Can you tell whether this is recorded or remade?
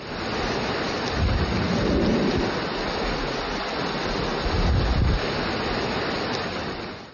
recorded